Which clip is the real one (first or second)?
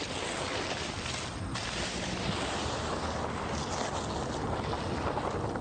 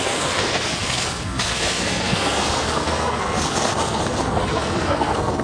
first